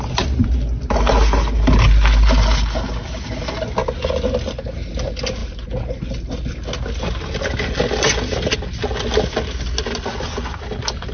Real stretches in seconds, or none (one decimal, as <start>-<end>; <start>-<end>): 0.0-11.1